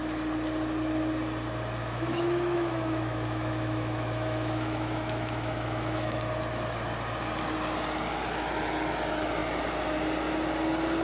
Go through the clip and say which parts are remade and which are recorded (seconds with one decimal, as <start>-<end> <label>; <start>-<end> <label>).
0.0-1.8 recorded; 1.8-6.2 remade; 6.2-11.0 recorded